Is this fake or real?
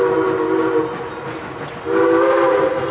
real